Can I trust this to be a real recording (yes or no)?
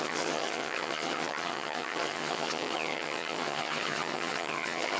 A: no